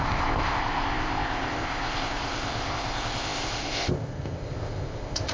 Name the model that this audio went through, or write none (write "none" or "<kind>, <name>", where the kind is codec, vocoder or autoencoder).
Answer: codec, ZipCodec